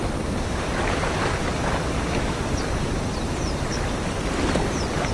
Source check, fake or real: real